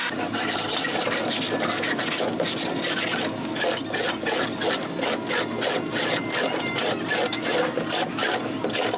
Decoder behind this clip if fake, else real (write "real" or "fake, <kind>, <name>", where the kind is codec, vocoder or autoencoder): real